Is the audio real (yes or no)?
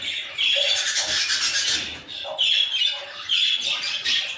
yes